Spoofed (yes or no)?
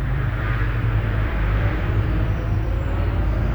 yes